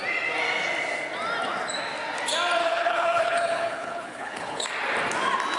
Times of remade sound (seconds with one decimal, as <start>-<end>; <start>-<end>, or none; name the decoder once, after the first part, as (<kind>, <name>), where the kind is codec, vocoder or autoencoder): 2.6-4.7 (codec, HILCodec)